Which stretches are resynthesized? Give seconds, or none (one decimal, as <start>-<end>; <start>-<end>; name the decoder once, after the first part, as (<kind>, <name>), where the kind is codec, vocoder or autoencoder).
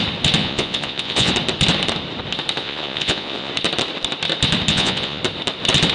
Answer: 0.4-1.3 (vocoder, Vocos); 2.6-3.5; 4.7-5.2